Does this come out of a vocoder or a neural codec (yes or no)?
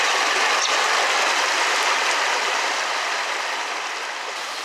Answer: no